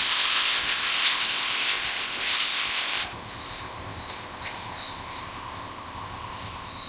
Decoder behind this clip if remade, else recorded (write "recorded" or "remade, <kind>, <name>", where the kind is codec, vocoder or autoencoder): remade, codec, ZipCodec